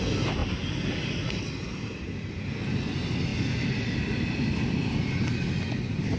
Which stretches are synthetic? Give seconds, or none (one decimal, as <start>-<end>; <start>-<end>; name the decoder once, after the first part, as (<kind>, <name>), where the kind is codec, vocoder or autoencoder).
none